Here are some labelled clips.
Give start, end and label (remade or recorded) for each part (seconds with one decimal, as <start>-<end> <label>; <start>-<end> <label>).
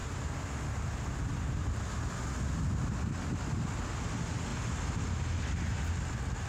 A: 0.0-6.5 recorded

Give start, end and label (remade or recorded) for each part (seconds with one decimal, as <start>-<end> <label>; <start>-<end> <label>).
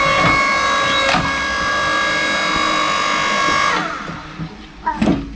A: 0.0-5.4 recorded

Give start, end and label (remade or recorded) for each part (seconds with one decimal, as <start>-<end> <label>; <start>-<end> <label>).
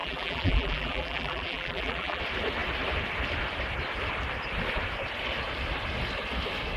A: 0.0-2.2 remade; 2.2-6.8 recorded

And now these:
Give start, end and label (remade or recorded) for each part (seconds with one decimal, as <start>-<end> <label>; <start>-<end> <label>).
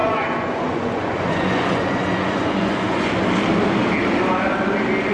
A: 0.0-3.1 remade; 3.1-5.1 recorded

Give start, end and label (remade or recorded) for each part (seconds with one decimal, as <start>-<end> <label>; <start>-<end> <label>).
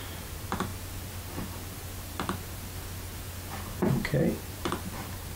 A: 0.0-0.7 remade; 0.7-3.9 recorded; 3.9-5.4 remade